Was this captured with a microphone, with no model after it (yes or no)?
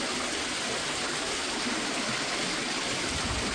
yes